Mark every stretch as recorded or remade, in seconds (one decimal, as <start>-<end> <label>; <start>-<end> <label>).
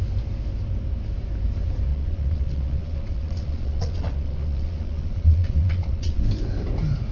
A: 0.0-1.9 recorded; 1.9-6.2 remade; 6.2-7.1 recorded